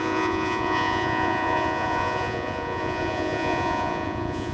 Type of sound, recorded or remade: remade